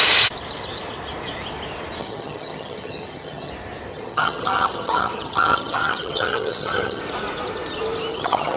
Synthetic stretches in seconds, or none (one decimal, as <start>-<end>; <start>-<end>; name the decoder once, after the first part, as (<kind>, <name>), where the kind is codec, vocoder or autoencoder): 2.0-3.5 (vocoder, HiFi-GAN); 3.9-7.0; 8.1-8.6